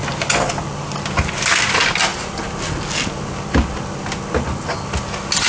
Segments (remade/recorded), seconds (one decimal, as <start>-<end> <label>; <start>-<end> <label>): 0.0-5.5 recorded